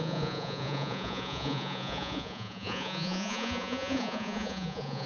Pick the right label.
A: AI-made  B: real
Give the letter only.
A